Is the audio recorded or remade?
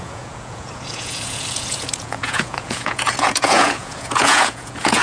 remade